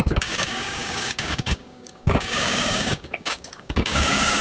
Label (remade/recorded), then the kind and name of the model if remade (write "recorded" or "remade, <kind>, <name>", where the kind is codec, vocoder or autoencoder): remade, codec, DAC